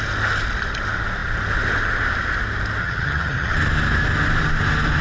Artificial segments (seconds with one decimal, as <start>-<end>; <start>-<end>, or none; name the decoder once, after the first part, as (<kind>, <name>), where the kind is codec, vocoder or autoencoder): 2.8-3.5 (vocoder, HiFi-GAN)